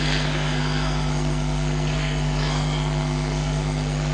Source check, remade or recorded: remade